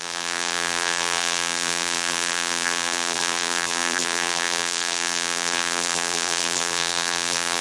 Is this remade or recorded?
remade